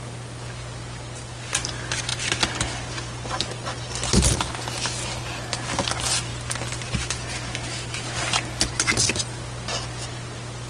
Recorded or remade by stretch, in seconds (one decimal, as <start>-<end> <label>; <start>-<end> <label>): 0.0-10.7 recorded